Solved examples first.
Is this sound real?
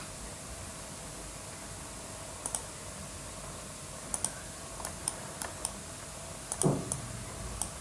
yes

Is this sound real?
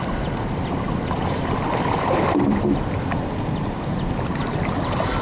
no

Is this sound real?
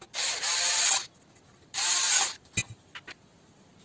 yes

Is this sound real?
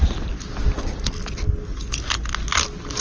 yes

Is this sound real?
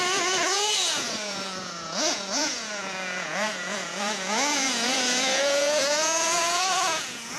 no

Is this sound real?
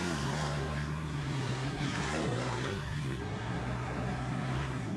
no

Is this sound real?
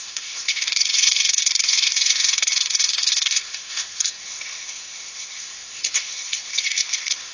no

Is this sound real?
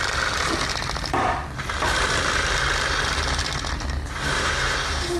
yes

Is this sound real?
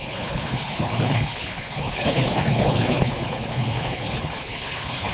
no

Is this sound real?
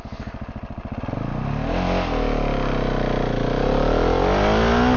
yes